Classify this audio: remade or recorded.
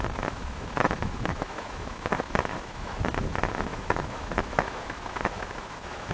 remade